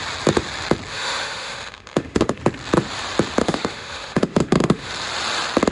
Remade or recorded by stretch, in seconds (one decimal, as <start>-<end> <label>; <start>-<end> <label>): 0.0-0.9 recorded; 0.9-2.4 remade; 2.4-3.4 recorded; 3.4-4.9 remade; 4.9-5.7 recorded